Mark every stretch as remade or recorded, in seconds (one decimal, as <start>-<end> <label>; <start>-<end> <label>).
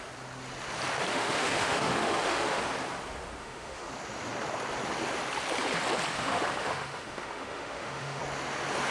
0.0-1.1 recorded; 1.1-2.6 remade; 2.6-3.4 recorded; 3.4-3.9 remade; 3.9-6.1 recorded; 6.1-8.2 remade; 8.2-8.9 recorded